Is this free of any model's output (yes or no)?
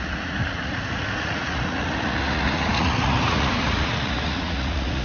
no